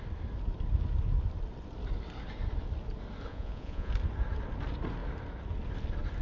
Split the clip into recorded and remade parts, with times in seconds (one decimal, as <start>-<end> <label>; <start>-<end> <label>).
0.0-3.3 recorded; 3.3-3.9 remade; 3.9-6.2 recorded